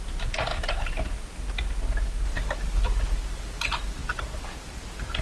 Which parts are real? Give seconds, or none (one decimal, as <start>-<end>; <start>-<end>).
0.0-5.2